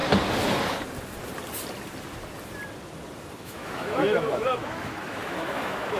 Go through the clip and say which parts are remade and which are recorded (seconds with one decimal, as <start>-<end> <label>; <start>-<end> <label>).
0.0-3.4 recorded; 3.4-6.0 remade